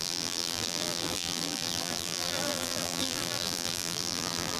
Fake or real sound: fake